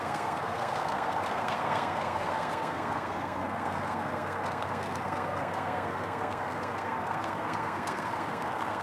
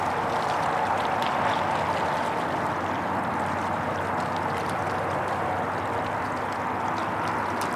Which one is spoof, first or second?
first